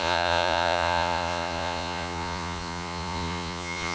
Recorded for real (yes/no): no